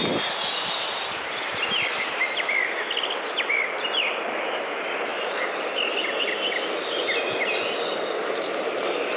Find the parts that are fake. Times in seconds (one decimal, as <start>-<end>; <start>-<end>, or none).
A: none